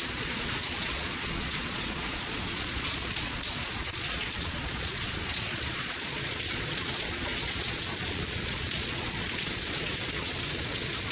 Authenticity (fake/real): fake